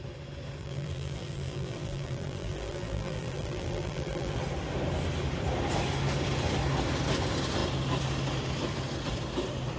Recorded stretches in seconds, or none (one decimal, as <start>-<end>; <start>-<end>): 0.0-0.6; 4.4-9.8